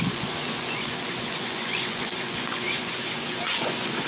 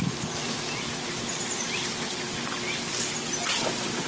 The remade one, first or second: first